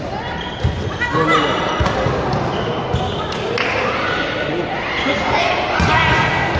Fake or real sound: real